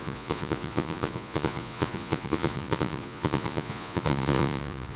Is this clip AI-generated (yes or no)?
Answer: yes